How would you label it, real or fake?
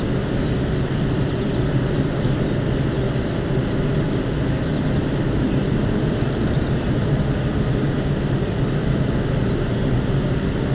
real